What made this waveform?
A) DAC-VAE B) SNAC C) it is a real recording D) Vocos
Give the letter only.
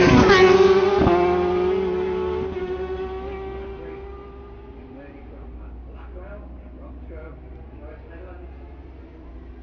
C